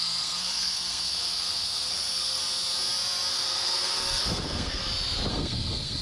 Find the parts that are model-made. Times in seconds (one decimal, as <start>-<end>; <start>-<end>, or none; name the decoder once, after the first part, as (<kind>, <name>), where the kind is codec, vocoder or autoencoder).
0.0-2.4 (codec, SNAC); 3.3-4.8; 5.3-6.0